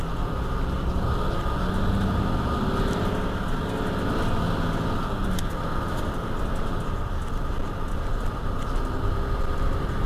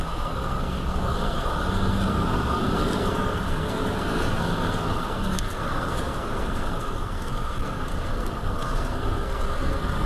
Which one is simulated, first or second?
second